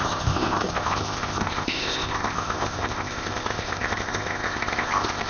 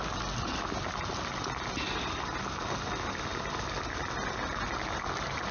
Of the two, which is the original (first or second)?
second